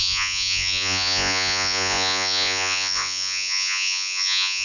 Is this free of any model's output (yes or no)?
no